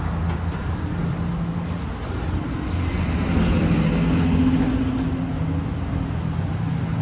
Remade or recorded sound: recorded